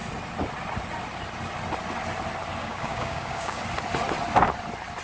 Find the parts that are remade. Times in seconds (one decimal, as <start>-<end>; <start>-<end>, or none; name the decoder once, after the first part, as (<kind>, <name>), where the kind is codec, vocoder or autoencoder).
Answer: 2.6-3.6 (codec, DAC)